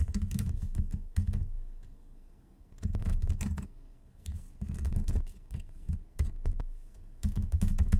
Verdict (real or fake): fake